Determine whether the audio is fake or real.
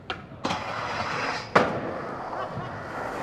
real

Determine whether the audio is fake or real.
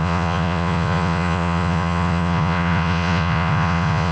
fake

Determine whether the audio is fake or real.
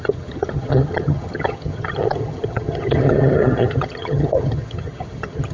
fake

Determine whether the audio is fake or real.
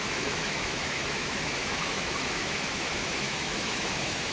fake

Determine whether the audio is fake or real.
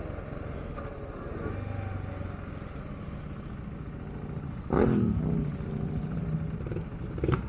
real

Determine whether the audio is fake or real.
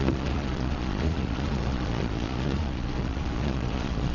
fake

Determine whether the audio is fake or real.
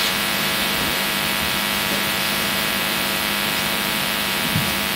fake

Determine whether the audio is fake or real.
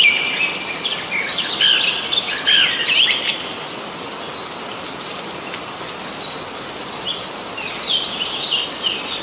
real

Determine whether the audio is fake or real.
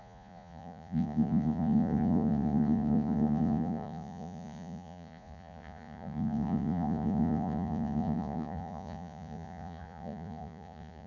fake